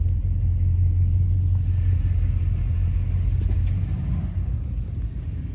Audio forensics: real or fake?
real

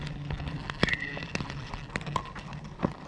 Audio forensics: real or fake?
real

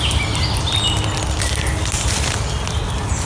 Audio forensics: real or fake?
real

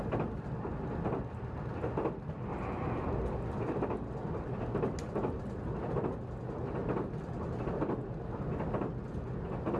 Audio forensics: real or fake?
real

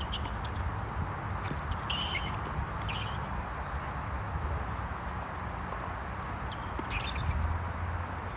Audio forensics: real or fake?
real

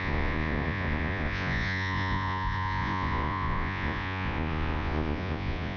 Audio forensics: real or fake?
fake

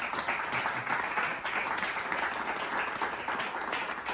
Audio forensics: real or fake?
real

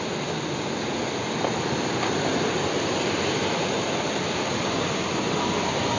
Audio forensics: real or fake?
real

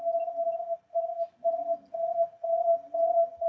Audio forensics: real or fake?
real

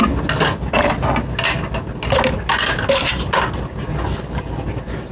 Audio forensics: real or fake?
real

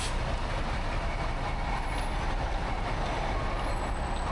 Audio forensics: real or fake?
real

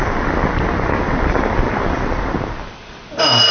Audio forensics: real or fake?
real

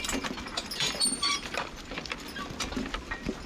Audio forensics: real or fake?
real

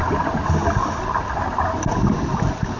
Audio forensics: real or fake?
real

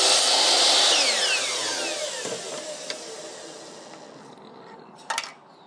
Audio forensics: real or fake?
real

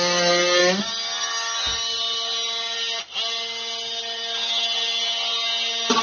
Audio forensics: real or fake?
real